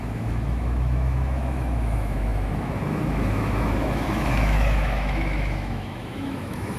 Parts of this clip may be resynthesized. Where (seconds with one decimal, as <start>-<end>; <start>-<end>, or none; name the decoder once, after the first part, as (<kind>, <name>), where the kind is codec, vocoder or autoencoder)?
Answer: 0.0-6.8 (autoencoder, DAC-VAE)